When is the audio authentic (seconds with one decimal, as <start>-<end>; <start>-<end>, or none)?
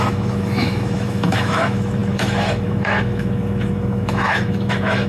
none